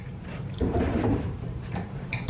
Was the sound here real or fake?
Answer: fake